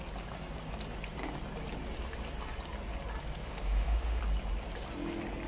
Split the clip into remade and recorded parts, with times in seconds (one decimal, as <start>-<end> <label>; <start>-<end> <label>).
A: 0.0-3.4 recorded; 3.4-4.2 remade; 4.2-5.5 recorded